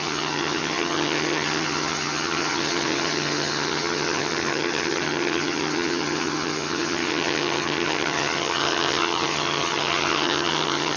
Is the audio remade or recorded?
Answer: remade